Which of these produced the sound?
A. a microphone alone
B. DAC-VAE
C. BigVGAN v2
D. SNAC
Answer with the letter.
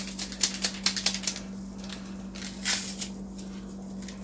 A